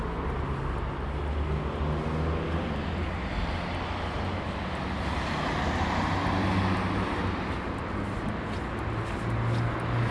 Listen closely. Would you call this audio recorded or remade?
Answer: recorded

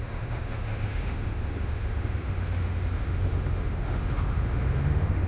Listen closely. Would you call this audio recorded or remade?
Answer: remade